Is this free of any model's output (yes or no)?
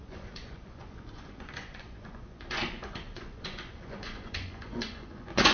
no